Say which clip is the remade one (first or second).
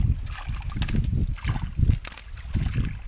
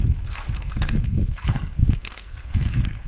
second